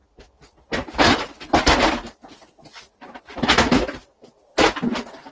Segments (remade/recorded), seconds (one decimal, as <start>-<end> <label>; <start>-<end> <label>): 0.0-5.3 recorded